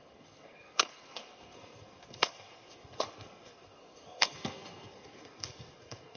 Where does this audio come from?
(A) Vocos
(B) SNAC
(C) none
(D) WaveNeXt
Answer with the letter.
B